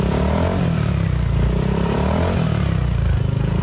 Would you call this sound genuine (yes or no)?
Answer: yes